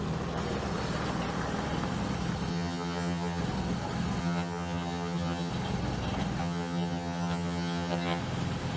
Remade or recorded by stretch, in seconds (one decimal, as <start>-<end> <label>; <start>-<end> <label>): 0.0-2.5 recorded; 2.5-3.4 remade; 3.4-4.2 recorded; 4.2-5.5 remade; 5.5-6.4 recorded; 6.4-8.2 remade; 8.2-8.8 recorded